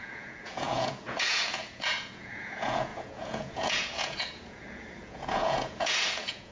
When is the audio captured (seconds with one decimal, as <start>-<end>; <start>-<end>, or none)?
none